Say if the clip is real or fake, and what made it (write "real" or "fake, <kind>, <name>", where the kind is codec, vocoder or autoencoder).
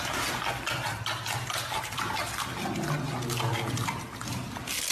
real